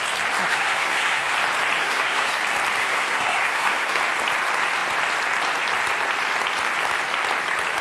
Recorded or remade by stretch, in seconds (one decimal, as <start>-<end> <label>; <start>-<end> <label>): 0.0-0.5 recorded; 0.5-1.3 remade; 1.3-1.8 recorded; 1.8-2.4 remade; 2.4-2.8 recorded; 2.8-4.0 remade; 4.0-7.8 recorded